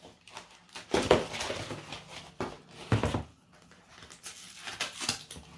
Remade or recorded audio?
recorded